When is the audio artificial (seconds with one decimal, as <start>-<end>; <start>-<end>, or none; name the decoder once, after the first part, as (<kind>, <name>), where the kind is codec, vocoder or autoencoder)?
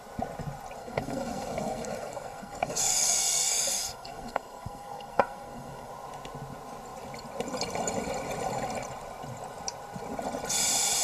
0.8-5.9 (codec, SNAC)